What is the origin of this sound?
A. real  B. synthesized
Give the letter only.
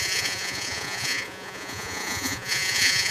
B